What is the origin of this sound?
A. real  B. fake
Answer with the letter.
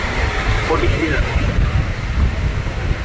B